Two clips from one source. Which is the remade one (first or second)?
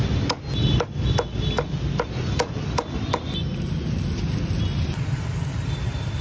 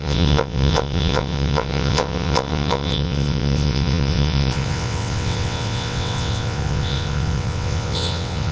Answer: second